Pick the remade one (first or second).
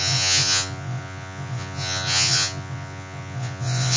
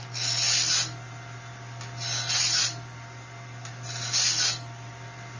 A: first